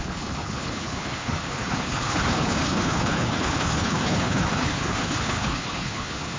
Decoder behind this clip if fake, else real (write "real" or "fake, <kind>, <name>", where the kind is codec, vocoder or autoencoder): fake, codec, HILCodec